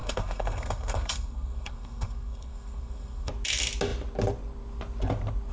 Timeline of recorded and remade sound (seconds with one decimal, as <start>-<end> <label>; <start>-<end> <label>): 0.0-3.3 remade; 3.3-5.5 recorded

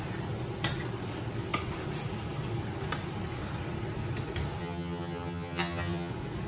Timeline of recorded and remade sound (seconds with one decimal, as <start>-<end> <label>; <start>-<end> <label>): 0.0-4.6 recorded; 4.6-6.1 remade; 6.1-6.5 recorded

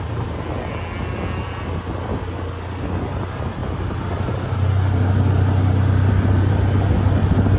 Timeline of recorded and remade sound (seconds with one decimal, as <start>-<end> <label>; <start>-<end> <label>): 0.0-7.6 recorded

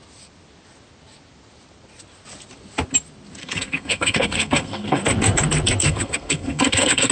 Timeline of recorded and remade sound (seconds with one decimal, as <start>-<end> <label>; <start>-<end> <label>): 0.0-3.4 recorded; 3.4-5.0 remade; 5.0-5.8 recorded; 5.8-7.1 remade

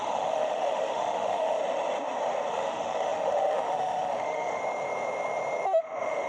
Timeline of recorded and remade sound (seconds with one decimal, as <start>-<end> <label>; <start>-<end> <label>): 0.0-1.6 remade; 1.6-2.5 recorded; 2.5-4.6 remade; 4.6-5.8 recorded; 5.8-6.3 remade